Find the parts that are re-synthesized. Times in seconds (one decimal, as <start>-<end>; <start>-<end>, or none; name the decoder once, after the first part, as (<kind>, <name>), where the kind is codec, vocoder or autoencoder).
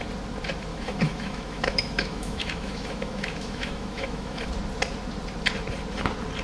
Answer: 0.7-4.5 (autoencoder, DAC-VAE)